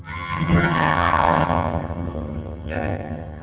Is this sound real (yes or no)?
no